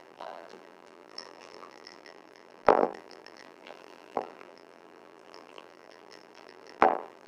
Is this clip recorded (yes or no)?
no